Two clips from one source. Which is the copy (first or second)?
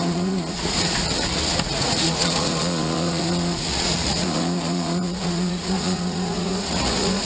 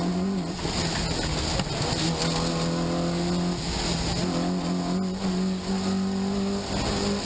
first